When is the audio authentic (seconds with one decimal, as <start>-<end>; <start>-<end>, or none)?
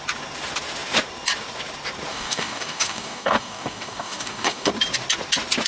0.0-2.1; 4.7-5.7